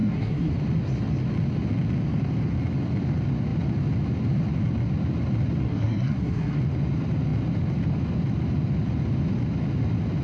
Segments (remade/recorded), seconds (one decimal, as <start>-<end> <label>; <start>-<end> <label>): 0.0-0.5 remade; 0.5-5.6 recorded; 5.6-6.6 remade; 6.6-10.2 recorded